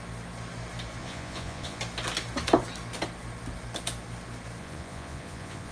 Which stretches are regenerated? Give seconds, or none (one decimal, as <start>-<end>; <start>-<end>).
1.0-1.8; 4.6-5.7